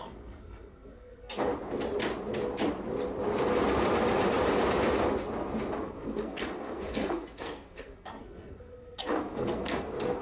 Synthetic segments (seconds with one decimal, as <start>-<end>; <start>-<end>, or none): 0.0-1.5; 5.8-10.2